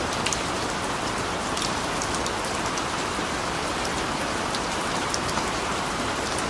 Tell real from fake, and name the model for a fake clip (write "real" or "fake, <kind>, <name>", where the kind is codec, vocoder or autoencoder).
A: real